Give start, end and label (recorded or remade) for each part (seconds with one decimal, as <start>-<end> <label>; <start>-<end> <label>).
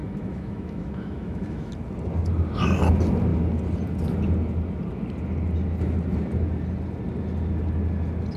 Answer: 0.0-1.7 remade; 1.7-8.4 recorded